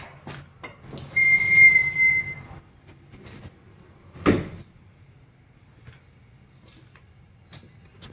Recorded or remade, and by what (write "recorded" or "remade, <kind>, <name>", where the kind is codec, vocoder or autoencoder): recorded